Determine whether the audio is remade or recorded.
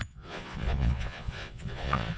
remade